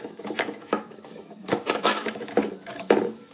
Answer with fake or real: fake